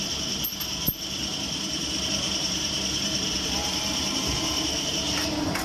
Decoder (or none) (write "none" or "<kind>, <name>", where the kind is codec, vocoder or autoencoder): vocoder, BigVGAN v2